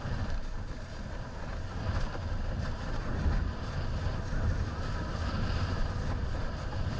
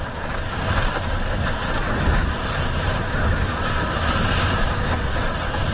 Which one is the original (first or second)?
second